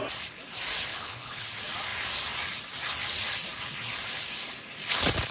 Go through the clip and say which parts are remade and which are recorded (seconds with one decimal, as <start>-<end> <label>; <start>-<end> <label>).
0.0-0.9 recorded; 0.9-1.5 remade; 1.5-5.3 recorded